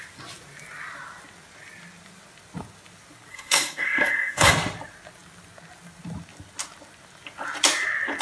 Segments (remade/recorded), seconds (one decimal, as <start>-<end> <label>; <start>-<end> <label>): 0.0-3.3 recorded; 3.3-4.5 remade; 4.5-8.2 recorded